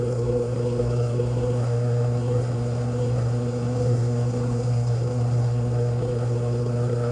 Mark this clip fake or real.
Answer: fake